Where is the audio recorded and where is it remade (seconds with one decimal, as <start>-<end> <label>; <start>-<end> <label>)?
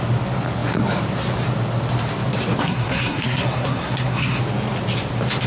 0.0-2.6 recorded; 2.6-4.4 remade; 4.4-5.5 recorded